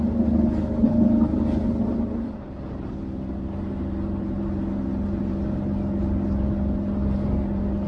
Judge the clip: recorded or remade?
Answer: recorded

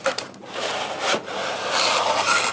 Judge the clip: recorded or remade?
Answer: recorded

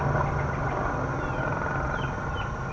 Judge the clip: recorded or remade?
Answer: recorded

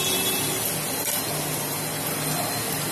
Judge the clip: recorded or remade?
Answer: recorded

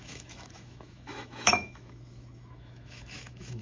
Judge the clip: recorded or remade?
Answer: remade